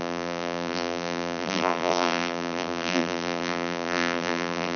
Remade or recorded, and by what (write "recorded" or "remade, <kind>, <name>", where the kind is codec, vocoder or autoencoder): remade, vocoder, BigVGAN v2